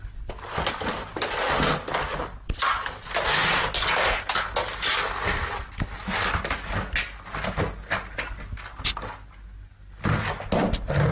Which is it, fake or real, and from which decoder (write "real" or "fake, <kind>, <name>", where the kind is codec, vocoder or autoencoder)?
real